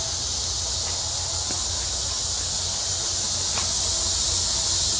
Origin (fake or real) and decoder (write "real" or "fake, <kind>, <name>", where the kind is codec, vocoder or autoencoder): real